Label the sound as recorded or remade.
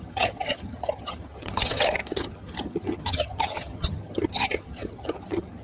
remade